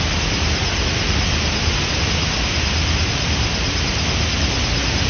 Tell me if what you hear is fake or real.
real